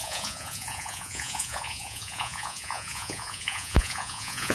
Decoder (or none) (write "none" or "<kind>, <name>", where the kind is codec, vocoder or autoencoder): vocoder, Vocos